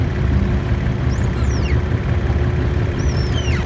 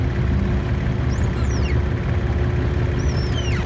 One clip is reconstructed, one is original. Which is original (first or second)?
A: second